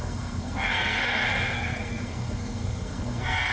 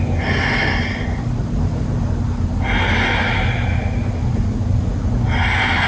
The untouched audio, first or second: second